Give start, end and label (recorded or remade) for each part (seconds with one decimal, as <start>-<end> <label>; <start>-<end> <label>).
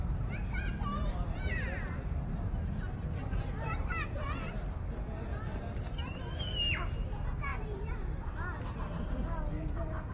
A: 0.0-1.1 recorded; 1.1-6.2 remade; 6.2-7.5 recorded; 7.5-8.6 remade; 8.6-10.1 recorded